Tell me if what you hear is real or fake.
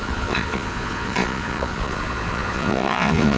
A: fake